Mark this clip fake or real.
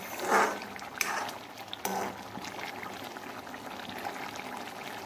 real